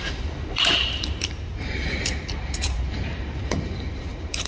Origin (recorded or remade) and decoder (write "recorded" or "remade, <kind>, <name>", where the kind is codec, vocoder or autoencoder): remade, vocoder, BigVGAN v2